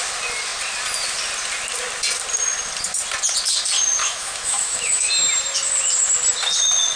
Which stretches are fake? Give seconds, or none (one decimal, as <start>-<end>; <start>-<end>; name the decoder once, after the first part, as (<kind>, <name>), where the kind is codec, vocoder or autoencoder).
4.0-5.1 (autoencoder, DAC-VAE)